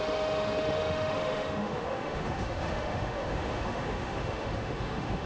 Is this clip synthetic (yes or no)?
yes